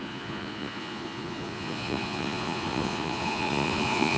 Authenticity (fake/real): fake